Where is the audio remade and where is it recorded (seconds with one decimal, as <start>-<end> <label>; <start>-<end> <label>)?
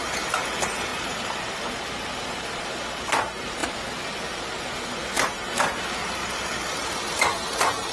0.0-0.9 recorded; 0.9-2.0 remade; 2.0-7.9 recorded